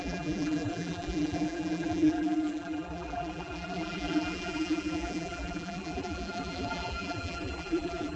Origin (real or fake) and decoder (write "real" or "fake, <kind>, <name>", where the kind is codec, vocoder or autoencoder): fake, vocoder, BigVGAN v2